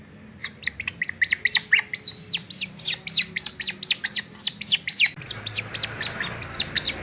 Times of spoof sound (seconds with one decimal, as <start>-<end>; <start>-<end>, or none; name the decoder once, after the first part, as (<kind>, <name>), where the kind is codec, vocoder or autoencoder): none